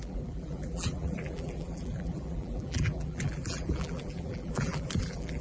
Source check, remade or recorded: remade